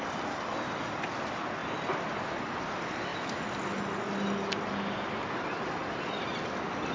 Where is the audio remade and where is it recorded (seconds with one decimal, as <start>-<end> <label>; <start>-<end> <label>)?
0.0-6.9 recorded